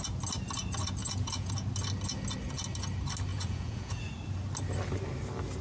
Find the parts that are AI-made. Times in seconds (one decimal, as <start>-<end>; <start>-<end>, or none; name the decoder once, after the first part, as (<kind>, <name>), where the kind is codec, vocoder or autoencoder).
1.0-1.5 (vocoder, Vocos); 3.3-4.0